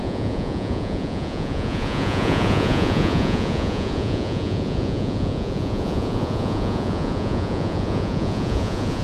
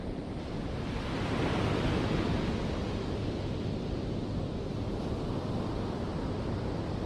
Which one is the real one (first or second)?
second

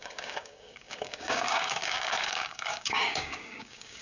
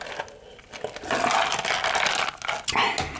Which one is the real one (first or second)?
second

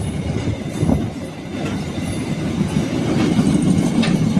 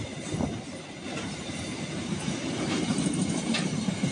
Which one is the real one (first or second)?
first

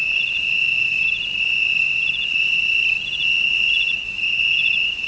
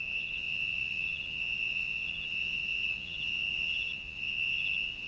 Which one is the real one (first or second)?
first